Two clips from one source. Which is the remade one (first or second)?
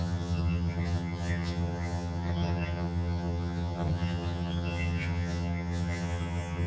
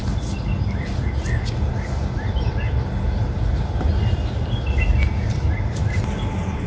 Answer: first